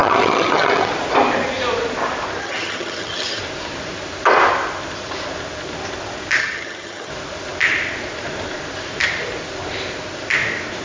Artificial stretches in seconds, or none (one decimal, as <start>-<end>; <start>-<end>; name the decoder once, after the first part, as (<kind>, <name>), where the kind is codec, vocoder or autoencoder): 0.0-0.9 (vocoder, HiFi-GAN); 2.4-3.4; 6.4-7.1

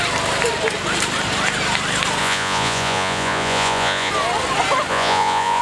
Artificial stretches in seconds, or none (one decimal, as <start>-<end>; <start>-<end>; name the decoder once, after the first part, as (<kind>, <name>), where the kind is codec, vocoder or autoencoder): 2.2-4.1 (vocoder, Vocos); 4.9-5.6

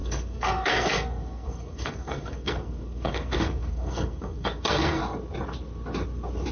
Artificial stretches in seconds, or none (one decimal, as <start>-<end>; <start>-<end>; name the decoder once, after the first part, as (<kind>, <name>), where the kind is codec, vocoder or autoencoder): 0.0-5.0 (codec, SNAC)

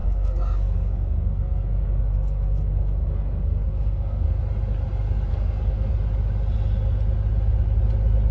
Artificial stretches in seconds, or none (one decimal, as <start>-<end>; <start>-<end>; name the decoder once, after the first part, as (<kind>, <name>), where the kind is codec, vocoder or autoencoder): 0.0-4.4 (codec, SNAC); 5.3-5.9

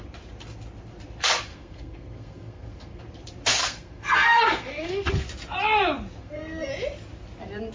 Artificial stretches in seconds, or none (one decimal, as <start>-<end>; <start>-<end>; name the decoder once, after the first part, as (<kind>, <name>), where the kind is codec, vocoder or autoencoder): 1.5-3.0 (codec, SNAC); 3.6-5.1; 6.2-6.7